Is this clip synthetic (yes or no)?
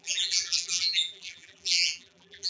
yes